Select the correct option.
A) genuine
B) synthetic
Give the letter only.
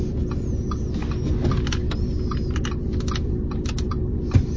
A